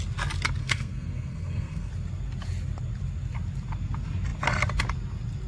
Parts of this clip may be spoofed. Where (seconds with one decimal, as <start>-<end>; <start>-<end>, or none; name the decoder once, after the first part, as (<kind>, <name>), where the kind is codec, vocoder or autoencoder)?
0.6-1.9 (codec, SNAC)